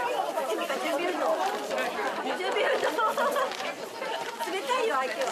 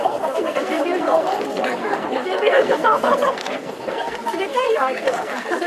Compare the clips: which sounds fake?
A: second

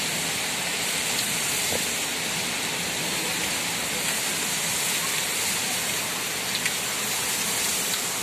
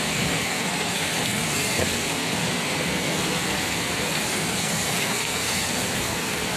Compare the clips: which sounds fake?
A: second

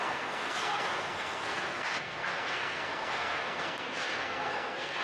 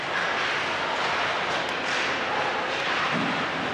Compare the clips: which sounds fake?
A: first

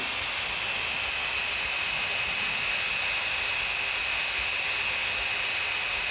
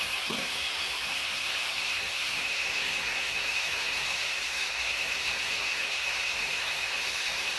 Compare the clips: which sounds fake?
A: second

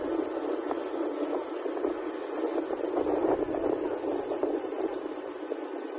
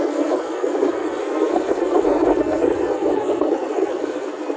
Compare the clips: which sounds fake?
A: second